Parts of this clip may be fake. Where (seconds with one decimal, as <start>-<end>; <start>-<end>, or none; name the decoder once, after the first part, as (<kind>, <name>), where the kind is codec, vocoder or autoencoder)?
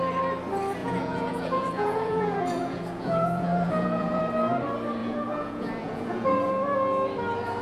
0.8-4.2 (vocoder, Vocos); 5.0-6.5